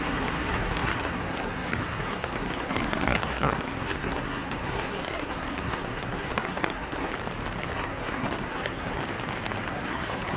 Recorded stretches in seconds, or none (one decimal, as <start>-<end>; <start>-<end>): 7.1-7.6; 9.0-9.7